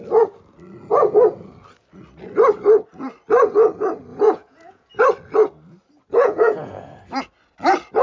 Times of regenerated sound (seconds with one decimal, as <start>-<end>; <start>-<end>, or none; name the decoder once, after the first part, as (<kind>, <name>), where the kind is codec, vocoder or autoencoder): 4.1-5.0 (vocoder, Vocos); 6.1-7.0